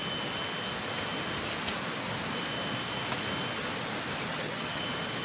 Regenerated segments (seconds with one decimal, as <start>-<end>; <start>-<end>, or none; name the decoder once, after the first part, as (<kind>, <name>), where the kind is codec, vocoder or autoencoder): 4.3-4.8 (vocoder, HiFi-GAN)

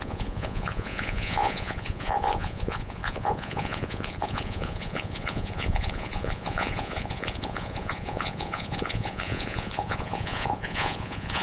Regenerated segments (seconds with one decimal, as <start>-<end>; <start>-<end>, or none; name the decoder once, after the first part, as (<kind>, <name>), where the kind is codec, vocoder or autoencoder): 0.0-11.4 (vocoder, Vocos)